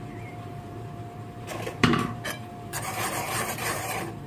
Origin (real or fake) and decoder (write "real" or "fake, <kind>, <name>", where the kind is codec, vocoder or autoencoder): fake, vocoder, BigVGAN v2